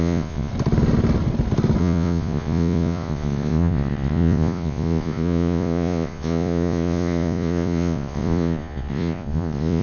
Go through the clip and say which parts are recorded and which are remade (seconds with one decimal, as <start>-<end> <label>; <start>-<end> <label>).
0.0-0.5 remade; 0.5-1.8 recorded; 1.8-9.8 remade